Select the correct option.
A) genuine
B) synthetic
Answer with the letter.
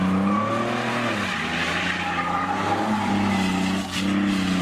A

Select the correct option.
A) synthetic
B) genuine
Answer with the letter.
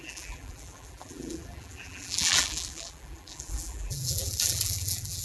A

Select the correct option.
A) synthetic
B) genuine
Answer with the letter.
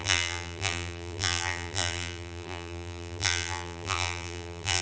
A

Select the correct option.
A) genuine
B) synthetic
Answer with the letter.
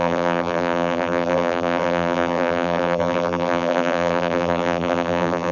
B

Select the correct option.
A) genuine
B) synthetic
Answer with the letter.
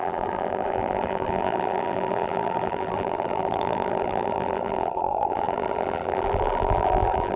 B